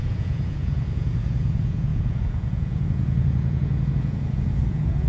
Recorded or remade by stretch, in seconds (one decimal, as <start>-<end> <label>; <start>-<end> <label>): 0.0-5.1 remade